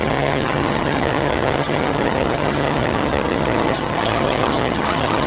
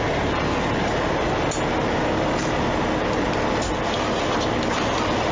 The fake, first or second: first